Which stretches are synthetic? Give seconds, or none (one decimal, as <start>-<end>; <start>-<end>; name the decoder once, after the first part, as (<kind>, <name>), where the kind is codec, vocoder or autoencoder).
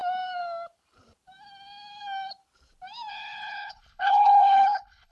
3.1-5.1 (codec, HILCodec)